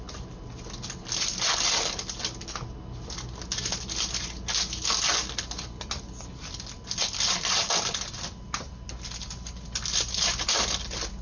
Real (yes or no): yes